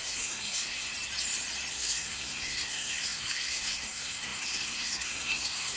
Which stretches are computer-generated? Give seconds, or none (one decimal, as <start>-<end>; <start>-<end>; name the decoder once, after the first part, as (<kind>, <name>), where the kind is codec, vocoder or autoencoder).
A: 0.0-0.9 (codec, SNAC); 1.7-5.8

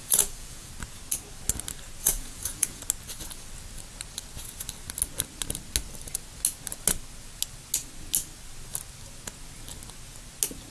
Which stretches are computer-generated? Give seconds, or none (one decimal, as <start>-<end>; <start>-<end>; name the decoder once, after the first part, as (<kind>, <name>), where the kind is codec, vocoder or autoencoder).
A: 0.0-0.7 (vocoder, Vocos); 2.0-2.8

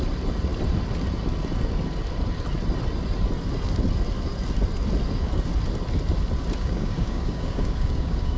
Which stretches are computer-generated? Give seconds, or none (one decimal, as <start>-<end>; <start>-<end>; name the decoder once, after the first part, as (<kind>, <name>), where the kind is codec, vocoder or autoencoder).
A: 6.6-8.4 (codec, DAC)

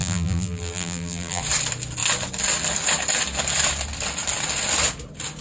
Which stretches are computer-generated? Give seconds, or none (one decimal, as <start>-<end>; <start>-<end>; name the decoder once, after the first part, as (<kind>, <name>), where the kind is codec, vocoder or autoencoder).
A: 0.0-1.4 (vocoder, BigVGAN v2)

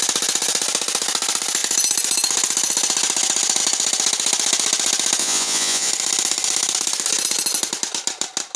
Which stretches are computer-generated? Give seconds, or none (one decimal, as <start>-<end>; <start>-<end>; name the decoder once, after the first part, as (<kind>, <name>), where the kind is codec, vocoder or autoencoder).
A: 5.2-5.9 (vocoder, Vocos)